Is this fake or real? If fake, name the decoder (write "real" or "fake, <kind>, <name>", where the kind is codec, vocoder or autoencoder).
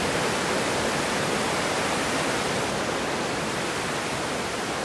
fake, vocoder, BigVGAN v2